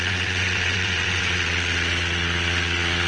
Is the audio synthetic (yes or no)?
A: yes